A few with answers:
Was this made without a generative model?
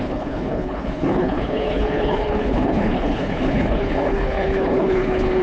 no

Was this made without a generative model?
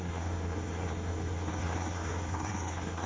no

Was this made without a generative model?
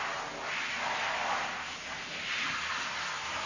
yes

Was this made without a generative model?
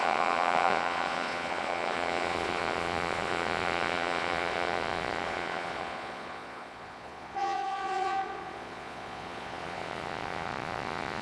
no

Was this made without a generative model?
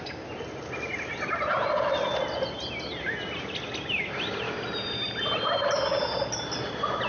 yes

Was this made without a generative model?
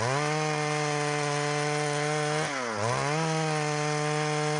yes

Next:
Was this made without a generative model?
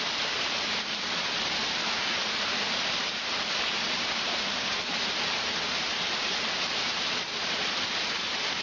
no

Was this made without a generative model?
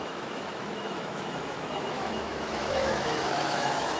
no